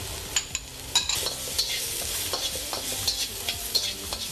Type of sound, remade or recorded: recorded